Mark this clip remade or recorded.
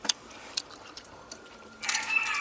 remade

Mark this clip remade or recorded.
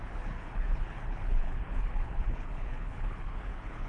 remade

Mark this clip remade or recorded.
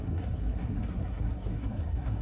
remade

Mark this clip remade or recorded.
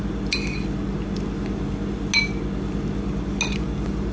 recorded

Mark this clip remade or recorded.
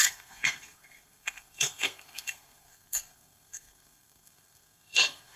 remade